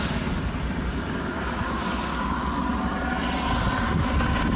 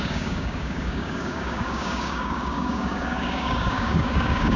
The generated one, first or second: second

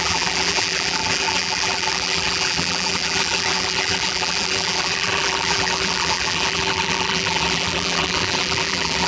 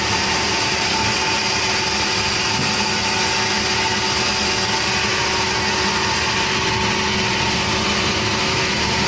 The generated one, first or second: first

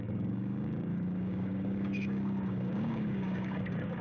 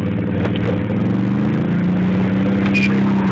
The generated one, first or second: first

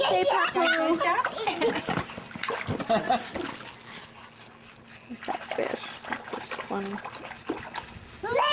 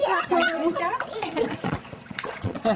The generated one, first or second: second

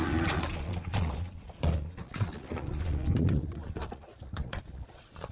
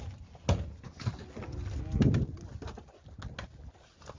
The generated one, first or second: first